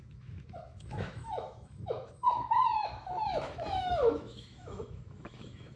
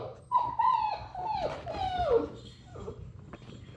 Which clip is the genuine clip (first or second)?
second